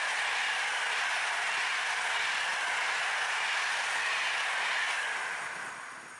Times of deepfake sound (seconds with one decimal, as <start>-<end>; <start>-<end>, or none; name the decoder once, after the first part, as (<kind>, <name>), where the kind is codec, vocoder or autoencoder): none